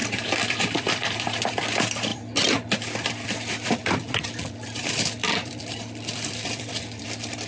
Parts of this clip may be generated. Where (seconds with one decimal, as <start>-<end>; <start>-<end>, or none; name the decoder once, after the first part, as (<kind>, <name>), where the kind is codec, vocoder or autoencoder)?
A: 0.0-7.5 (vocoder, BigVGAN v2)